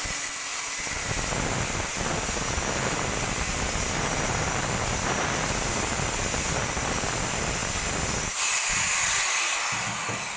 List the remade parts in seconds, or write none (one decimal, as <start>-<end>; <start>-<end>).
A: none